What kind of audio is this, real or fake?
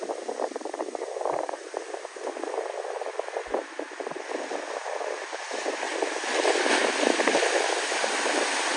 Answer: real